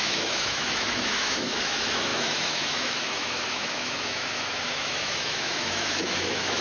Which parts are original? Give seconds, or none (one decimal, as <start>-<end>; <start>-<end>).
none